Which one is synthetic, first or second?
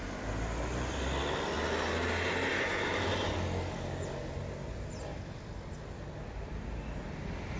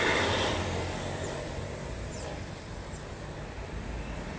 second